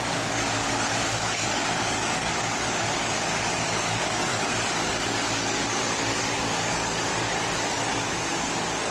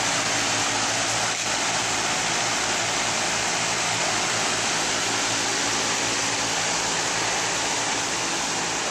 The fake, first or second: first